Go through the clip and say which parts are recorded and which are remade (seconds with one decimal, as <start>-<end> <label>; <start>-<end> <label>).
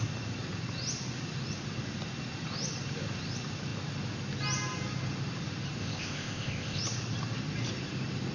0.0-5.8 recorded; 5.8-6.8 remade; 6.8-8.3 recorded